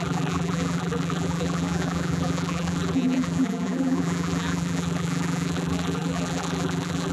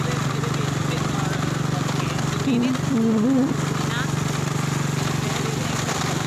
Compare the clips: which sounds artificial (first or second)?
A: first